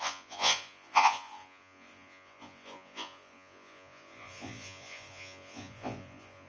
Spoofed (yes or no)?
yes